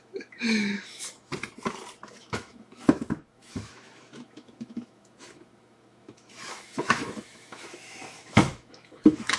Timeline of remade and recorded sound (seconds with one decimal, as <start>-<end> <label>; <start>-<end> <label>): 0.0-1.3 remade; 1.3-2.1 recorded; 2.1-9.4 remade